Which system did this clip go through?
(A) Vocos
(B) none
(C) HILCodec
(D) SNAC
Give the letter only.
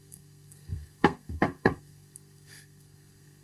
D